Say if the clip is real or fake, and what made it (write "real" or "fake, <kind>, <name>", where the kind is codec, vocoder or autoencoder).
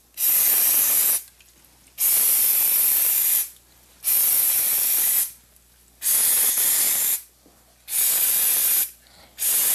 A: real